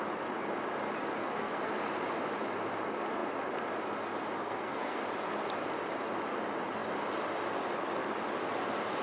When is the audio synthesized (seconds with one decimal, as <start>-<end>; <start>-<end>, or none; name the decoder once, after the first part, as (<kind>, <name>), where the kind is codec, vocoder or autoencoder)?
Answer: 1.2-1.7 (codec, SNAC); 4.4-5.0